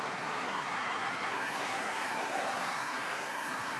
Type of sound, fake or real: fake